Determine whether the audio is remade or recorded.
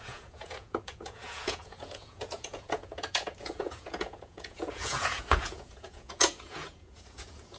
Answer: remade